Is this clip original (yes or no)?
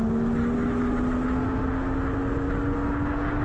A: yes